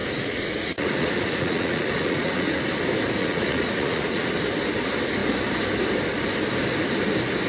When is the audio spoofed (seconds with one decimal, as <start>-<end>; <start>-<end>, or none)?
0.0-2.6; 3.2-4.3